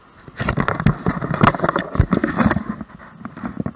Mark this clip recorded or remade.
recorded